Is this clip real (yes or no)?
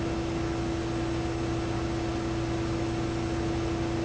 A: yes